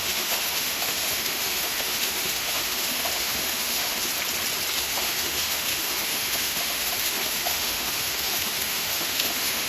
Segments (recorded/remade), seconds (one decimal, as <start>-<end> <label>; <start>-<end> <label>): 0.0-4.1 remade; 4.1-4.8 recorded; 4.8-9.7 remade